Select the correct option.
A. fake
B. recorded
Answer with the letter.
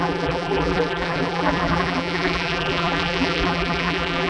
A